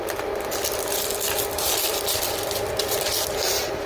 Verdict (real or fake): real